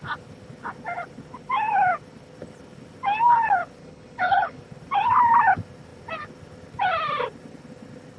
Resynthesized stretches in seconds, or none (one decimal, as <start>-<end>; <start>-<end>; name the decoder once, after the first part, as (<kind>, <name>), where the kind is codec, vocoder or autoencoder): 3.8-4.6 (codec, HILCodec)